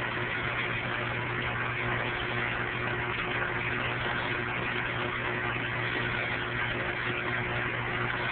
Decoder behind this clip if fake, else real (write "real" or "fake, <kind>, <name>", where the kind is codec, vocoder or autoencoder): real